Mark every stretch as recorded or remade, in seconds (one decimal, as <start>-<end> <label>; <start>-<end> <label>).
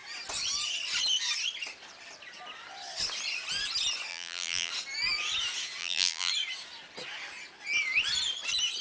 0.0-4.1 recorded; 4.1-4.7 remade; 4.7-5.8 recorded; 5.8-6.3 remade; 6.3-8.8 recorded